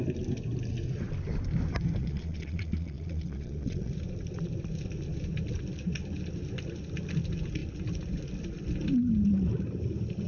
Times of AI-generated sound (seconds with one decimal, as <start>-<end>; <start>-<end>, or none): 2.0-3.9